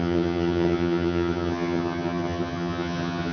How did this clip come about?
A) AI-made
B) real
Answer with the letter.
A